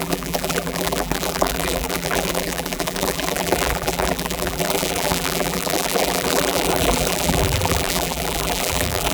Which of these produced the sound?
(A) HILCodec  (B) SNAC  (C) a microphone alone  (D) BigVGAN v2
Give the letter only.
D